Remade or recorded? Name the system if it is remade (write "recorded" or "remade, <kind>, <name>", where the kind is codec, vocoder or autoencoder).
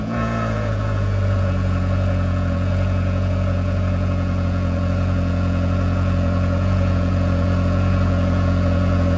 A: remade, vocoder, Vocos